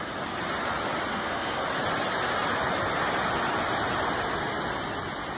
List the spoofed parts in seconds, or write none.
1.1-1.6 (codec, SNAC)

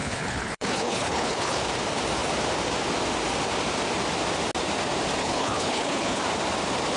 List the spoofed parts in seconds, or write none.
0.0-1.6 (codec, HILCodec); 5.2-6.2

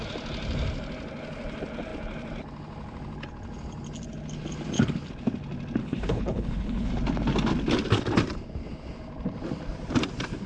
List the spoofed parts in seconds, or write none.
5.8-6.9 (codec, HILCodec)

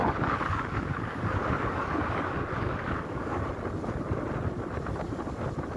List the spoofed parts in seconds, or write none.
0.0-3.4 (codec, DAC)

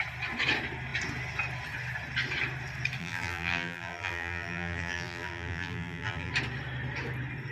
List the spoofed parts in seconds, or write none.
3.0-6.3 (vocoder, BigVGAN v2)

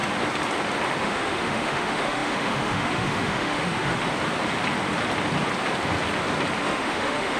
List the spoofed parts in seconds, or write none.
1.0-4.0 (autoencoder, DAC-VAE); 6.6-7.4

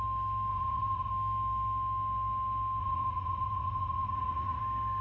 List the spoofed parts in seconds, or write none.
0.5-1.1 (vocoder, Vocos); 2.8-4.6